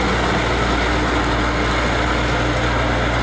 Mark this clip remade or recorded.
recorded